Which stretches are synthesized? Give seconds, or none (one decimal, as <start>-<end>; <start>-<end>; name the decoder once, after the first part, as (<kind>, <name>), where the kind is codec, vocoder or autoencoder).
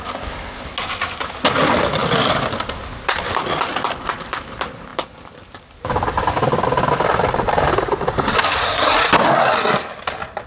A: none